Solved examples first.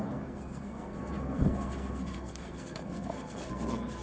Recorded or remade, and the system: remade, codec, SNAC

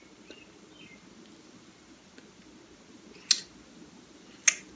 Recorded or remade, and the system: recorded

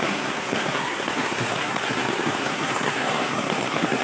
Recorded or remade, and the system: remade, codec, SNAC